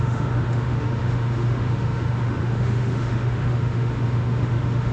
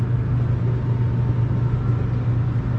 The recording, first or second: second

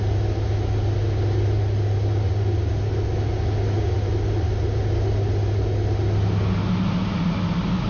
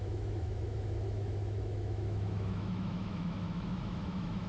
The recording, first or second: first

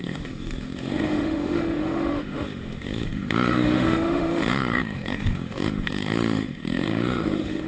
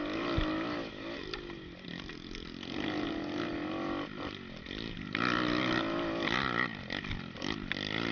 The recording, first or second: second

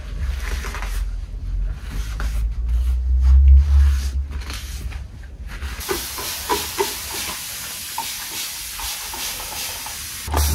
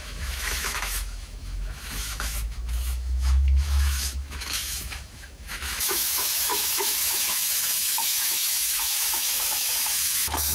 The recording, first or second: first